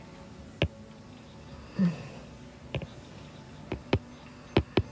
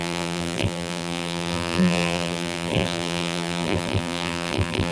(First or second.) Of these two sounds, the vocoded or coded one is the second